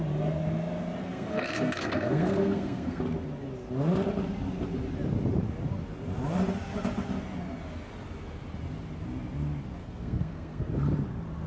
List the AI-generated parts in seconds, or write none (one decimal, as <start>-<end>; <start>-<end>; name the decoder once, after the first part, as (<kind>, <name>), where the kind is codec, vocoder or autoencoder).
1.0-3.0 (codec, SNAC); 9.8-10.7

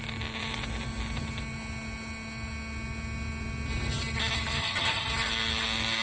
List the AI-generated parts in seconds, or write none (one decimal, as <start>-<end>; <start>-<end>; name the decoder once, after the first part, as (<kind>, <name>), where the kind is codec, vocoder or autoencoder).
4.6-5.1 (vocoder, HiFi-GAN)

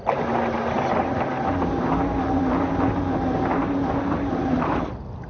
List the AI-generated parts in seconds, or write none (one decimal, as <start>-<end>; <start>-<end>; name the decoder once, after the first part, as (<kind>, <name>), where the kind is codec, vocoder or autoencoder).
none

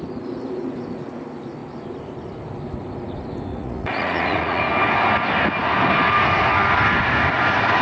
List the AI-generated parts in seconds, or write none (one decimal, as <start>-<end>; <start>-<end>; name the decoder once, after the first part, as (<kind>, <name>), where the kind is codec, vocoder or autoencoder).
3.5-4.6 (vocoder, Vocos)